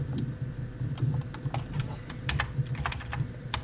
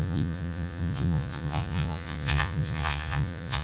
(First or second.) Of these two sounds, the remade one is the second